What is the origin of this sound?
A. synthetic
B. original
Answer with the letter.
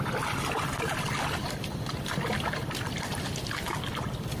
A